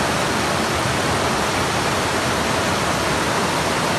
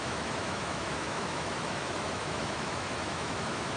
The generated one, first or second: second